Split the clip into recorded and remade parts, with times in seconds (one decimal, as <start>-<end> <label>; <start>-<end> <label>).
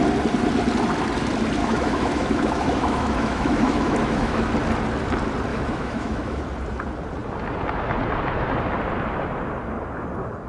0.0-1.6 recorded; 1.6-4.5 remade; 4.5-5.5 recorded; 5.5-6.4 remade; 6.4-10.5 recorded